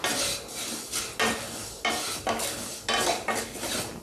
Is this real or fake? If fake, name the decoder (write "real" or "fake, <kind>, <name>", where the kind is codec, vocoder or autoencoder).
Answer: real